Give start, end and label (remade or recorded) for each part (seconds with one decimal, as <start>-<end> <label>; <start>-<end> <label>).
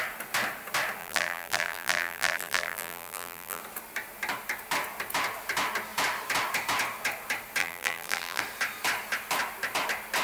0.0-1.0 recorded; 1.0-3.6 remade; 3.6-7.6 recorded; 7.6-8.4 remade; 8.4-10.2 recorded